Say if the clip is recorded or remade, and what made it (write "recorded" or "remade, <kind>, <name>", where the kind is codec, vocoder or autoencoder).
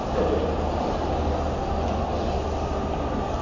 recorded